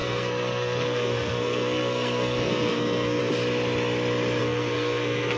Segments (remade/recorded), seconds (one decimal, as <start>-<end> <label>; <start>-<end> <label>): 0.0-3.2 remade; 3.2-4.4 recorded; 4.4-5.4 remade